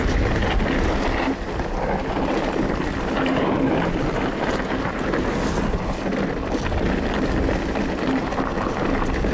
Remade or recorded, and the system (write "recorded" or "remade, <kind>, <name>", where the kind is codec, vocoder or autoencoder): recorded